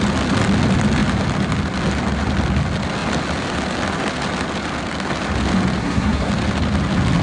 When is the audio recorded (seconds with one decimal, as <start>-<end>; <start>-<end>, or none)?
0.0-5.8; 6.3-7.2